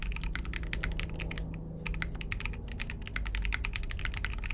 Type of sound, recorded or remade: recorded